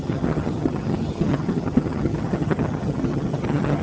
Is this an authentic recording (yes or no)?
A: no